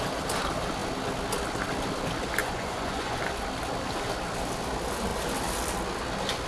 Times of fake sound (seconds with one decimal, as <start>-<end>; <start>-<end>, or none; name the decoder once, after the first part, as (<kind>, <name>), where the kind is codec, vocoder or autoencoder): 2.4-3.2 (vocoder, Vocos)